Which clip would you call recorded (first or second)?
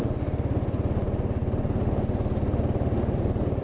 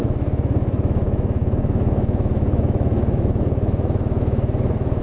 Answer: first